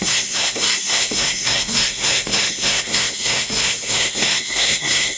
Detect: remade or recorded remade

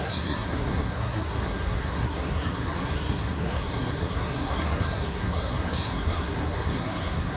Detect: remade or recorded remade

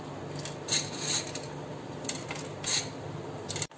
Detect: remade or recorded recorded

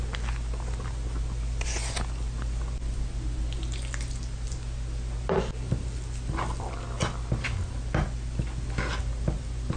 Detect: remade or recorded recorded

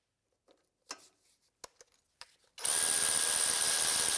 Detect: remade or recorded recorded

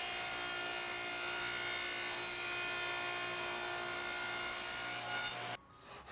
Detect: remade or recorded recorded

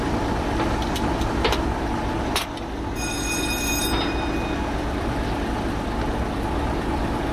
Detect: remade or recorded recorded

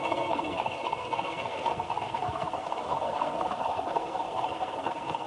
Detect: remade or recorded remade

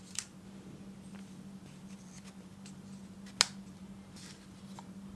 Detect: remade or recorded recorded